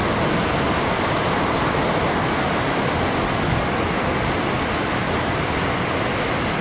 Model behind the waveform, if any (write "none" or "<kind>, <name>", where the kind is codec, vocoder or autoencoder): none